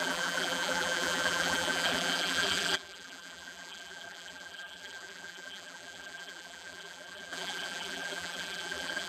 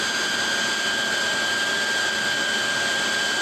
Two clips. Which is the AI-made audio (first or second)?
first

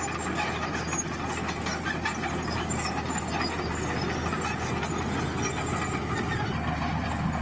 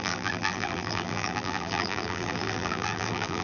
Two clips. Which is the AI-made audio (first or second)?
second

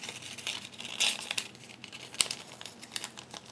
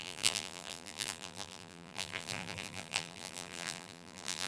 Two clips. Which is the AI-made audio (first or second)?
second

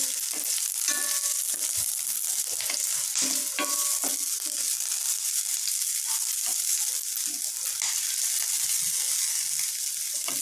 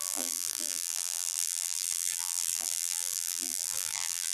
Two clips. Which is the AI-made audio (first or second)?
second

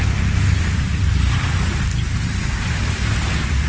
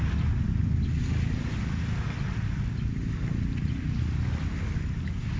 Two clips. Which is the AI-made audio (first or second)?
first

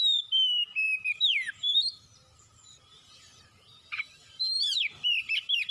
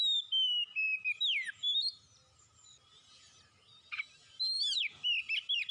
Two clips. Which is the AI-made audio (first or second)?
first